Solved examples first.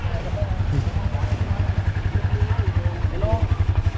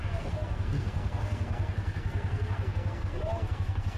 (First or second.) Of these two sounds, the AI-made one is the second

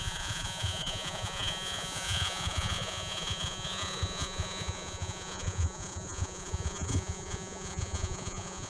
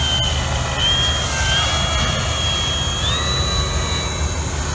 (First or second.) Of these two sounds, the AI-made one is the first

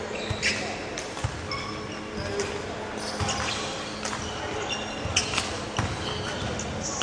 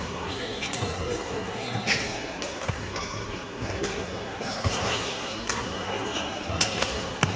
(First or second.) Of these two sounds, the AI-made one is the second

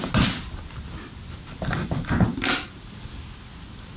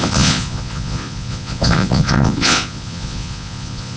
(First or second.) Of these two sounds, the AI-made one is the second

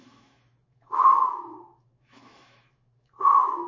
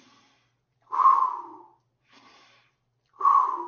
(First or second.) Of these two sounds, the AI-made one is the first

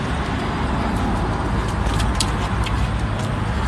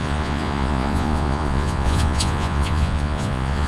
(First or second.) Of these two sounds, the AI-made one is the second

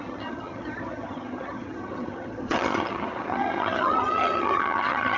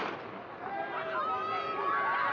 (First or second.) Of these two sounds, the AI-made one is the first